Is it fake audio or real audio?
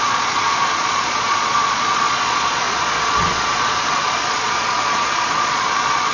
fake